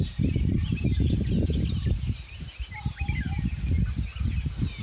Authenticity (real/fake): real